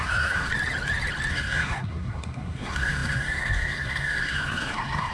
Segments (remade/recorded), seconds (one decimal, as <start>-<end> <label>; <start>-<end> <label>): 0.0-0.5 remade; 0.5-1.3 recorded; 1.3-5.1 remade